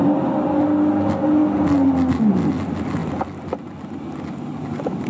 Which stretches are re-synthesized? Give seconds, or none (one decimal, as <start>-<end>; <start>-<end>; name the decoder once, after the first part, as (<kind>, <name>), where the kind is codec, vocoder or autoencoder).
none